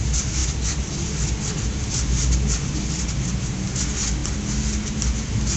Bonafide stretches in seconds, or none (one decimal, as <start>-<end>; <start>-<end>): 0.0-5.6